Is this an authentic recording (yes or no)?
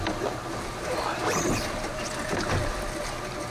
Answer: yes